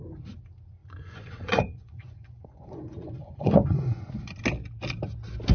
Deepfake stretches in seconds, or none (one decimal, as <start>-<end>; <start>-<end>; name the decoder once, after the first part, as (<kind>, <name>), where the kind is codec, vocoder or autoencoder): 0.8-4.1 (vocoder, Vocos)